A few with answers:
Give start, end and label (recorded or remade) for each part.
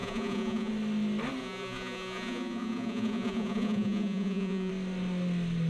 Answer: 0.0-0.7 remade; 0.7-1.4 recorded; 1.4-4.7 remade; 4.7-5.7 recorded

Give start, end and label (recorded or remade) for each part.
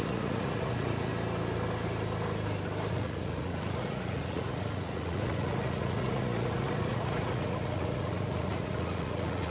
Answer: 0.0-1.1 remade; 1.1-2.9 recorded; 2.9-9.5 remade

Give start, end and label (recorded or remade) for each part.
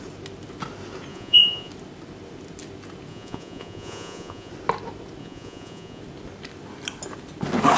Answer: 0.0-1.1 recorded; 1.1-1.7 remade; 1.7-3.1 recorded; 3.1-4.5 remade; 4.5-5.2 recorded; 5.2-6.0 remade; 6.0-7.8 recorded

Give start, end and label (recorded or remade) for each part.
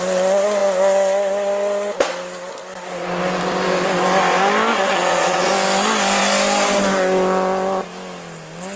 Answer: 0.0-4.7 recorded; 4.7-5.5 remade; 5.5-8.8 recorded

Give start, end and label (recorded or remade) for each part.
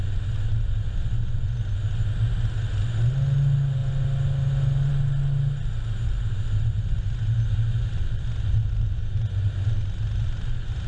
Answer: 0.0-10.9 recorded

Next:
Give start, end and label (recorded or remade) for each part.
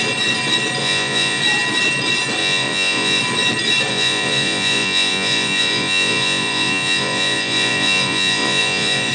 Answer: 0.0-0.8 recorded; 0.8-1.4 remade; 1.4-2.4 recorded; 2.4-3.2 remade; 3.2-3.9 recorded; 3.9-9.1 remade